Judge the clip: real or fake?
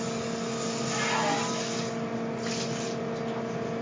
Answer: real